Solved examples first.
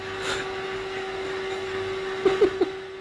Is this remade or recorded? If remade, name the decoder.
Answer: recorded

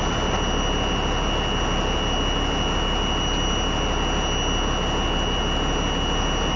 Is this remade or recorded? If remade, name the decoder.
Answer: recorded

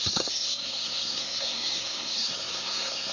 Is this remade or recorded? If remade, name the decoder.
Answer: remade, codec, SNAC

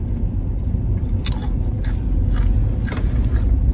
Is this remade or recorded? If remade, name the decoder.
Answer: recorded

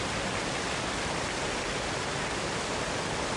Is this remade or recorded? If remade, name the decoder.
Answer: recorded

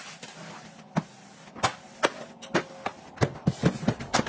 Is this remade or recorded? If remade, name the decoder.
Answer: recorded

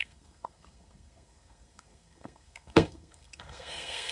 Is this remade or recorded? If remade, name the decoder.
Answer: remade, codec, SNAC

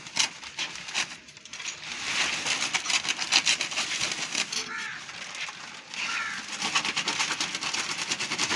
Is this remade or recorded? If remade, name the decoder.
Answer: recorded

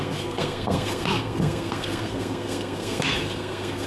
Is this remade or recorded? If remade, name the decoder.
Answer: remade, codec, SNAC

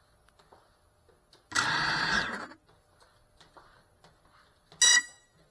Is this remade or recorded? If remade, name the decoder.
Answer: recorded